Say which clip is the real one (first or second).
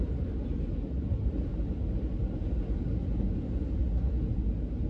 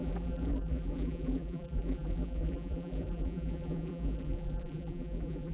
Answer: first